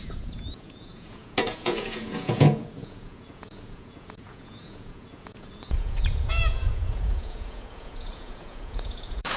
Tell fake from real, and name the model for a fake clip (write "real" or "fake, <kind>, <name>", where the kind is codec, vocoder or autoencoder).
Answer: fake, vocoder, Vocos